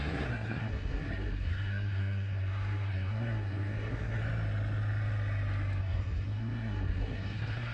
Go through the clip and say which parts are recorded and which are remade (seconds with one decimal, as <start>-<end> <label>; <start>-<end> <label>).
0.0-4.2 remade; 4.2-5.8 recorded; 5.8-7.7 remade